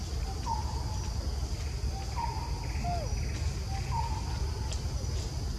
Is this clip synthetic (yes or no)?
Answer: no